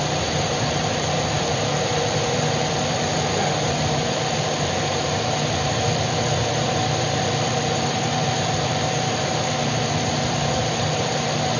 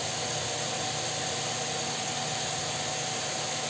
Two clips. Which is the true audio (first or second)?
second